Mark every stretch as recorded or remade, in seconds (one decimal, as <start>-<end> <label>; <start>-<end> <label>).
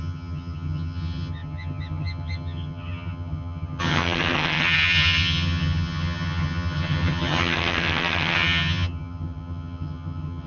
0.0-10.5 remade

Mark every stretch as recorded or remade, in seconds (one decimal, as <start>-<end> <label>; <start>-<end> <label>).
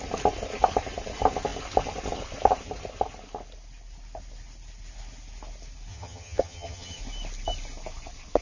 0.0-5.9 recorded; 5.9-7.0 remade; 7.0-8.4 recorded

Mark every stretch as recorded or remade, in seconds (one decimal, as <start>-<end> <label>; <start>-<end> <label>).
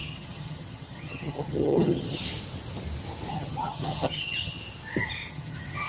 0.0-2.2 remade; 2.2-3.3 recorded; 3.3-4.6 remade; 4.6-5.3 recorded; 5.3-5.9 remade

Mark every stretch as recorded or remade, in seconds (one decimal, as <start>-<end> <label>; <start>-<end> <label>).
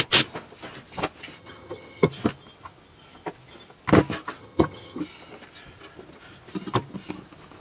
0.0-1.4 recorded; 1.4-2.1 remade; 2.1-4.4 recorded; 4.4-5.0 remade; 5.0-7.6 recorded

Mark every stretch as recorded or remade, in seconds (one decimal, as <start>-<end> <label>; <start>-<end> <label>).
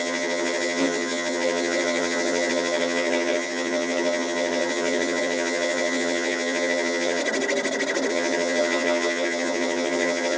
0.0-7.2 remade; 7.2-8.1 recorded; 8.1-10.4 remade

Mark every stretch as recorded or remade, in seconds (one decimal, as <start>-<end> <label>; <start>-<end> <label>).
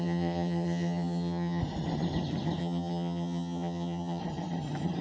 0.0-1.6 remade; 1.6-2.6 recorded; 2.6-4.2 remade; 4.2-5.0 recorded